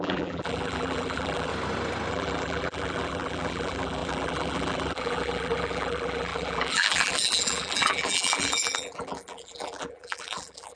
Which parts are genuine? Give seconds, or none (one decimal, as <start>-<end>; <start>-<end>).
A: 1.5-2.1